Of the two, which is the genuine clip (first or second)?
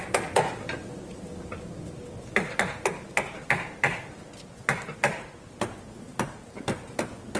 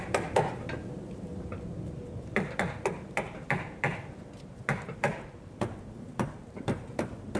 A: first